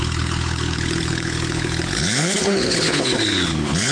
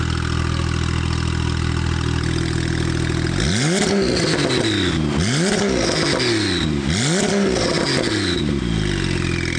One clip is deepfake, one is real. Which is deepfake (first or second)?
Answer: first